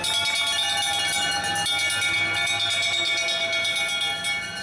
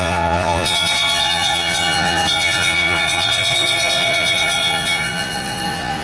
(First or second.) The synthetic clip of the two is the second